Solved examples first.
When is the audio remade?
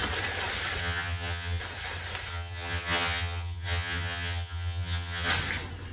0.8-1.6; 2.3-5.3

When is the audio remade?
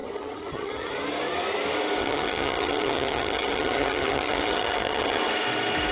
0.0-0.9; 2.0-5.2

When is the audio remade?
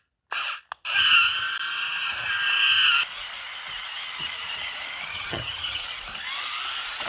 5.1-5.8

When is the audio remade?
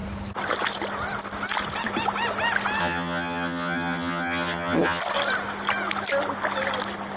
2.8-5.0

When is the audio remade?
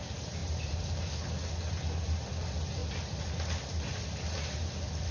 none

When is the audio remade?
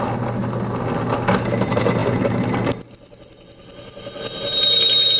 none